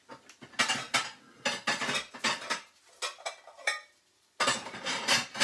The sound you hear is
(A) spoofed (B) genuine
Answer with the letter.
B